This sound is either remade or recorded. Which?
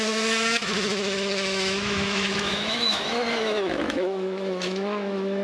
remade